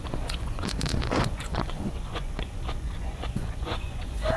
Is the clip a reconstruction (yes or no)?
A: yes